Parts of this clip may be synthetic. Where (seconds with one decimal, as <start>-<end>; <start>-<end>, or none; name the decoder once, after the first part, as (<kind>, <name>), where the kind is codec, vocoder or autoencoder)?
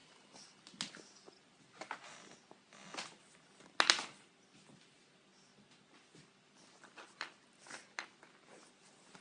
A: none